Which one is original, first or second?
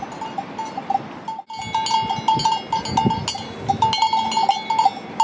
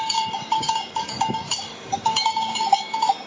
first